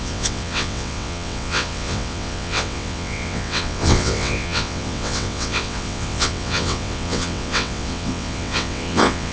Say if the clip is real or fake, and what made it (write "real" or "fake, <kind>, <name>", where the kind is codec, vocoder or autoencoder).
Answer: fake, vocoder, WaveNeXt